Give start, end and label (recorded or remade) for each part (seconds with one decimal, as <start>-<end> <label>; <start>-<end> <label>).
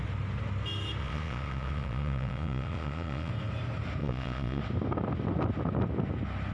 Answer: 0.0-1.0 recorded; 1.0-3.3 remade; 3.3-4.0 recorded; 4.0-4.6 remade; 4.6-6.5 recorded